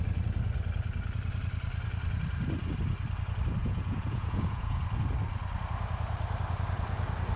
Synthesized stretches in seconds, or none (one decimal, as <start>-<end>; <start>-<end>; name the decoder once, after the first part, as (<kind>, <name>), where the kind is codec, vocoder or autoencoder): 3.6-4.8 (vocoder, Vocos)